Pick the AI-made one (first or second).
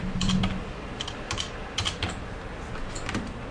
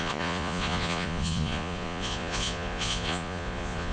second